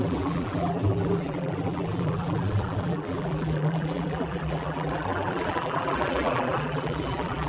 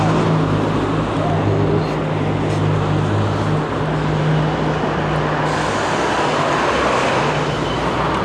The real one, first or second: second